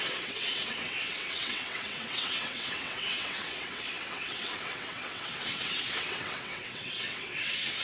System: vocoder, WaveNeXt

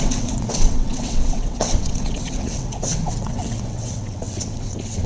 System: vocoder, WaveNeXt